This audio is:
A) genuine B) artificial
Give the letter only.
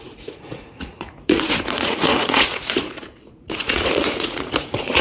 B